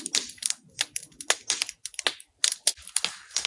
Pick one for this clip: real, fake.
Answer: real